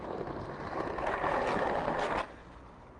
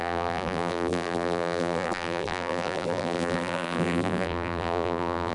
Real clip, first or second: first